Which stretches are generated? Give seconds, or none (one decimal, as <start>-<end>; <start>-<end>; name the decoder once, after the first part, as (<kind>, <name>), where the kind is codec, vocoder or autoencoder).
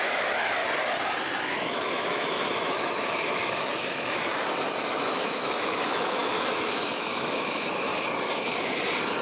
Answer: 0.0-0.6 (autoencoder, DAC-VAE); 1.5-4.3; 4.9-7.9